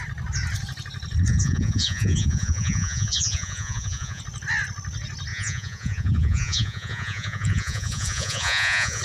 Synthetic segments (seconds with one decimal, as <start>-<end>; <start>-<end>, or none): 1.3-4.2; 5.3-9.0